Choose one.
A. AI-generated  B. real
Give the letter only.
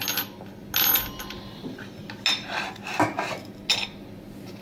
B